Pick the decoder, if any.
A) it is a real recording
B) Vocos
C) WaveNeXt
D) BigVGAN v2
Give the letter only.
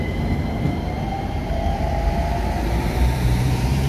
D